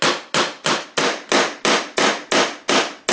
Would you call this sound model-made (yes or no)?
no